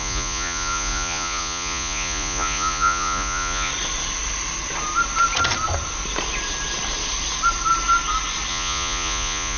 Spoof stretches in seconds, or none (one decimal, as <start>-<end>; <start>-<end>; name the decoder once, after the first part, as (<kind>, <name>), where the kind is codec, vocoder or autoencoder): 0.0-3.7 (vocoder, Vocos); 8.5-9.6